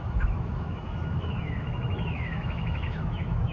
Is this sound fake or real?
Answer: fake